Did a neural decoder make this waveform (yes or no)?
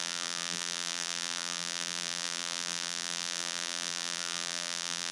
yes